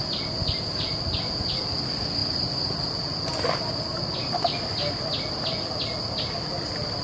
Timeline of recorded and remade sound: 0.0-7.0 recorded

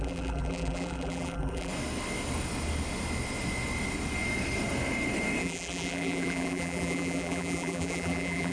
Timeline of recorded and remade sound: 0.0-1.7 remade; 1.7-5.4 recorded; 5.4-8.5 remade

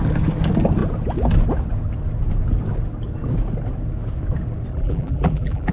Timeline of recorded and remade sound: 0.0-4.7 recorded; 4.7-5.7 remade

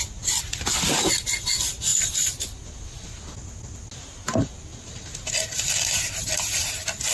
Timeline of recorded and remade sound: 0.0-7.1 recorded

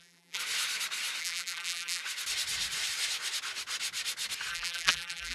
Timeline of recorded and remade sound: 0.0-0.4 remade; 0.4-1.2 recorded; 1.2-2.0 remade; 2.0-4.5 recorded; 4.5-5.3 remade

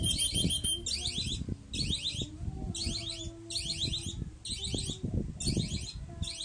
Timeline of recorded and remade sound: 0.0-6.4 recorded

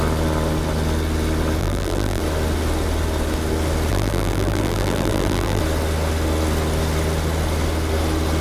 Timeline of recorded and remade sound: 0.0-1.6 recorded; 1.6-2.2 remade; 2.2-3.9 recorded; 3.9-5.6 remade; 5.6-8.4 recorded

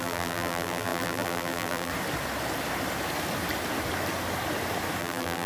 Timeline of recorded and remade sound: 0.0-1.9 remade; 1.9-5.0 recorded; 5.0-5.5 remade